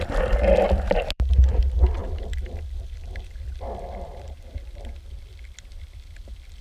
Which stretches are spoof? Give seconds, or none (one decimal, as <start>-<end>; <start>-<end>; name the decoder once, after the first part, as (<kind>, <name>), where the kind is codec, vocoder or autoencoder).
0.0-6.6 (vocoder, BigVGAN v2)